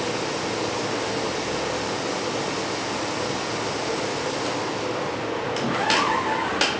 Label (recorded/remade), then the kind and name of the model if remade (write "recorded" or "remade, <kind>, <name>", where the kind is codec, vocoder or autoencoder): recorded